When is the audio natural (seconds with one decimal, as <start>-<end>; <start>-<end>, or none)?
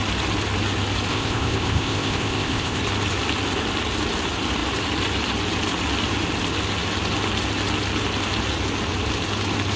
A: 0.0-1.1; 2.8-9.8